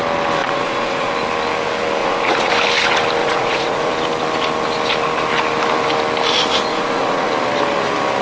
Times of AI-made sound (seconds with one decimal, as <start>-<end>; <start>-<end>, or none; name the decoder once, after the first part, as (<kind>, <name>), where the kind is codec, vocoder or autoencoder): 0.4-1.1 (vocoder, Vocos); 2.0-2.5; 3.2-3.9; 6.7-7.3